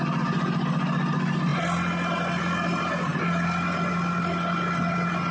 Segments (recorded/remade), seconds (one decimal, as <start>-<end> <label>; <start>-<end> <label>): 0.0-5.3 recorded